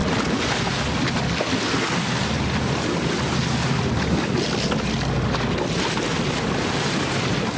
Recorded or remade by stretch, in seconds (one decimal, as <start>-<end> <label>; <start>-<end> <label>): 0.0-7.6 recorded